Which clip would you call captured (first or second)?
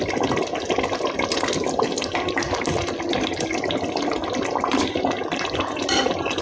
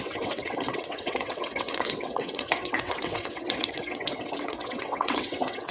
first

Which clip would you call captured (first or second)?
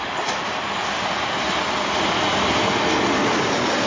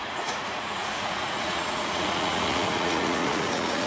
first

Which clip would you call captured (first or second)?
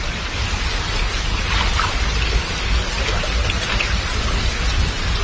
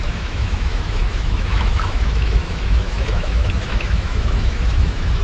first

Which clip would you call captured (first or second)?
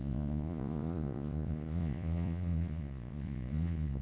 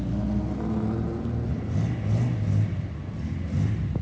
second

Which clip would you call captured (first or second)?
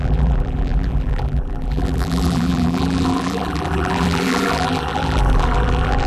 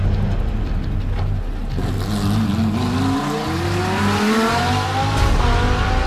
second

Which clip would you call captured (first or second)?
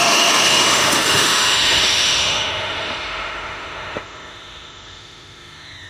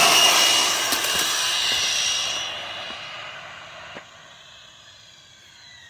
second